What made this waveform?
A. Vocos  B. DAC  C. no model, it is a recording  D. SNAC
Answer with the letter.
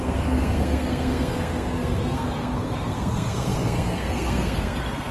D